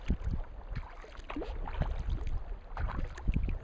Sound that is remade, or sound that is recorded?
recorded